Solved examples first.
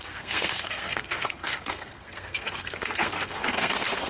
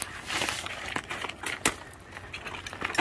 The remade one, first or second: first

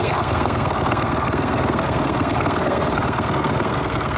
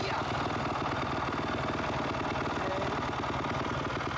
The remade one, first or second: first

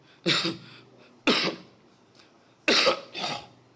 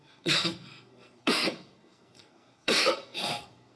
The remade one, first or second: second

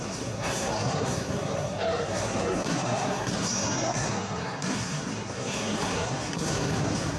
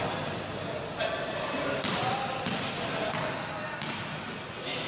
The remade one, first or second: first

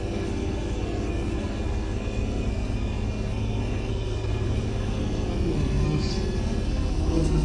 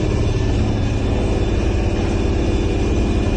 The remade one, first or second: first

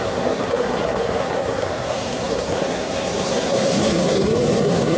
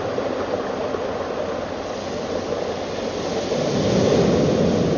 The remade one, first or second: first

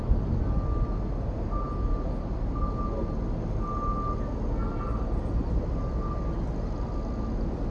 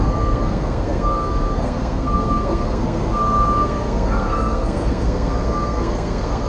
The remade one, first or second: second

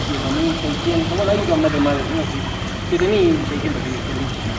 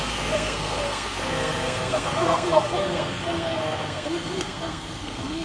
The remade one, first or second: second